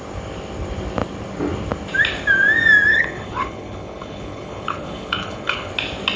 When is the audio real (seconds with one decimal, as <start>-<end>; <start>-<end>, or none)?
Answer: 0.0-2.9; 5.7-6.2